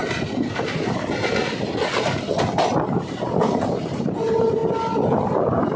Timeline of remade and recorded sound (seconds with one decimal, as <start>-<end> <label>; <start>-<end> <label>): 0.0-5.8 recorded